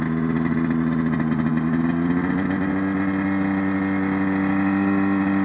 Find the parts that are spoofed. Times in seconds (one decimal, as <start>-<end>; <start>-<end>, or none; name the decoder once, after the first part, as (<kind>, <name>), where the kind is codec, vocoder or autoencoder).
none

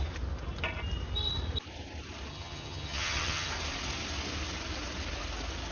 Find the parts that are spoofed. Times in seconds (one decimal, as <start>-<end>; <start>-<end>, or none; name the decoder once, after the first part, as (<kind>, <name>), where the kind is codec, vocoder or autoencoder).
2.3-3.5 (vocoder, HiFi-GAN)

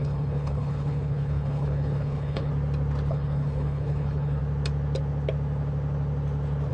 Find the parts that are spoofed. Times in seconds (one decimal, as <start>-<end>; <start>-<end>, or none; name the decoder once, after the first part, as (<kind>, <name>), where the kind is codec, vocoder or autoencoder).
0.0-2.5 (codec, HILCodec); 3.1-4.4

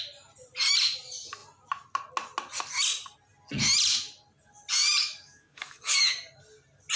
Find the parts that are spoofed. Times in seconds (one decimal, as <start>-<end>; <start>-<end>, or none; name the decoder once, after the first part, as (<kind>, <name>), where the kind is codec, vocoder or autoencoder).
5.0-6.1 (codec, DAC)

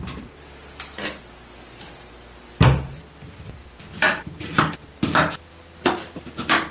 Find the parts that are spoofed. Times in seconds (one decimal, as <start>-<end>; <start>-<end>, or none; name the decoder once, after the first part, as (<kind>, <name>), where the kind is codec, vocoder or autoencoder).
0.0-0.6 (vocoder, BigVGAN v2); 4.0-5.5; 6.2-6.7

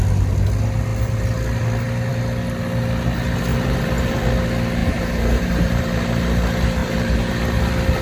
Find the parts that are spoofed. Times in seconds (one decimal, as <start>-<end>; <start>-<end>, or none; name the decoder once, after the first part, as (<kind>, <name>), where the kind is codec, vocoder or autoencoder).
3.5-4.2 (vocoder, BigVGAN v2); 4.8-6.0; 6.8-7.3